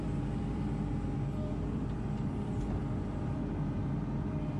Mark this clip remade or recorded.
remade